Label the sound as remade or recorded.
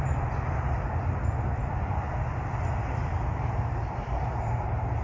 recorded